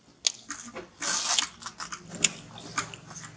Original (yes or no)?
yes